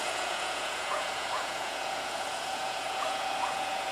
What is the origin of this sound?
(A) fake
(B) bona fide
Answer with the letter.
A